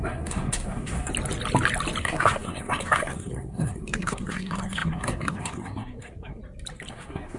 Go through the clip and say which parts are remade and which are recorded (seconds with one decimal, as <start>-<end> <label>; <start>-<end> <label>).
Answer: 0.0-1.1 remade; 1.1-2.0 recorded; 2.0-6.4 remade; 6.4-6.9 recorded; 6.9-7.4 remade